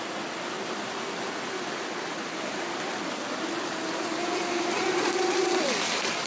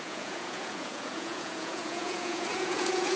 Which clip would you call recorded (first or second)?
first